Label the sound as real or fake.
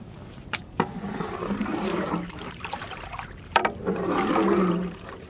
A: fake